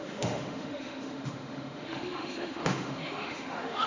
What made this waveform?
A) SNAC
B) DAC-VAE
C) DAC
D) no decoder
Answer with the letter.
B